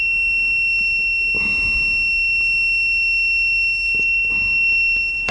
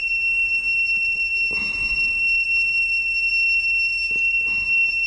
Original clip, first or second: first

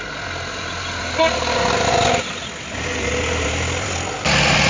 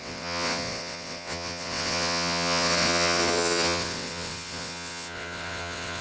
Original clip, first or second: first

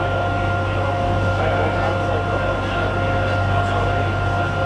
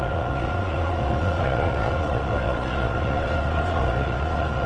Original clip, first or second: first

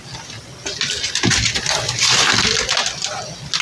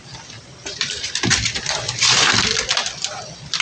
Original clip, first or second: first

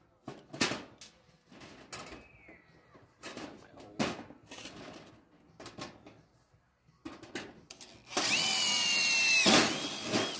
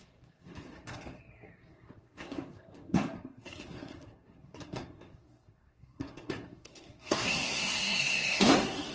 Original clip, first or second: first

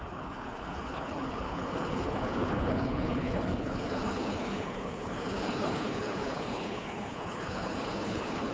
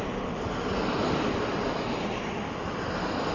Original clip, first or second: second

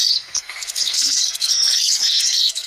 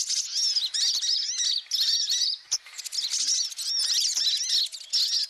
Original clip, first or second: second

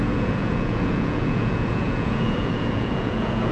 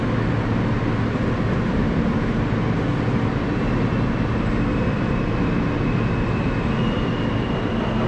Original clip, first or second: second